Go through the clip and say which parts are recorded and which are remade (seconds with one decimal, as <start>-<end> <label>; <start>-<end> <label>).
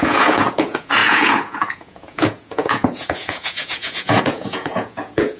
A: 0.0-5.4 remade